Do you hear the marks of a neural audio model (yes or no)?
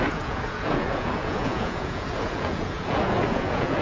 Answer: yes